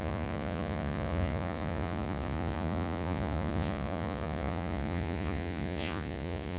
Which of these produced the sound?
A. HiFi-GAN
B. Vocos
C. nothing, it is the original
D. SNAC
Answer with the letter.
B